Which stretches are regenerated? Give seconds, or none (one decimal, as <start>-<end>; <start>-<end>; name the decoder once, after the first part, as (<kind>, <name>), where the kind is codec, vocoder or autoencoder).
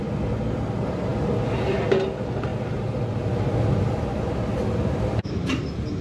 none